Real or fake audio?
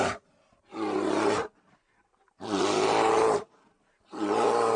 real